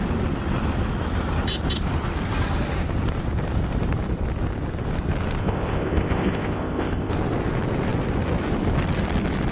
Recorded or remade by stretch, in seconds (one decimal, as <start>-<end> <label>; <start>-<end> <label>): 0.0-5.4 recorded; 5.4-7.1 remade; 7.1-9.5 recorded